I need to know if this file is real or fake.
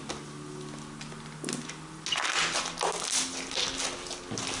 real